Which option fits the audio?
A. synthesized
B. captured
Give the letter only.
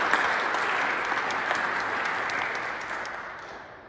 B